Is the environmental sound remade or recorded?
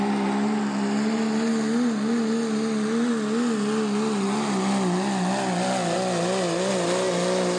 recorded